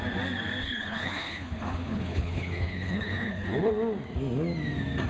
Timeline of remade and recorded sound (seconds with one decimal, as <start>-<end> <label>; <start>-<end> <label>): 0.0-0.6 recorded; 0.6-3.7 remade; 3.7-5.1 recorded